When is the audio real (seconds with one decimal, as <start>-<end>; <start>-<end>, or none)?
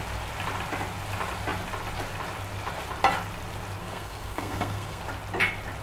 0.0-3.8; 5.0-5.8